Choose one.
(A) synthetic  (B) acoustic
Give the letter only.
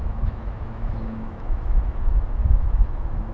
A